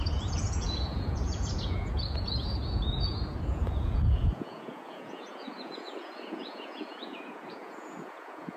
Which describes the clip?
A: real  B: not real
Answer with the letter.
B